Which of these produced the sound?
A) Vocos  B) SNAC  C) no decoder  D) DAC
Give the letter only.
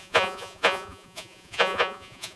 A